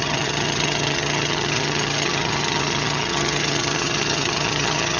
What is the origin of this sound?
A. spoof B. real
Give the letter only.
A